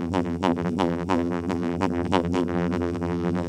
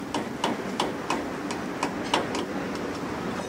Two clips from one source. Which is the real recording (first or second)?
second